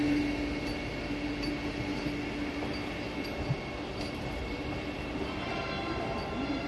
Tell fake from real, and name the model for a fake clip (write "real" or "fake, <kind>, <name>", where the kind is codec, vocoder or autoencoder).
real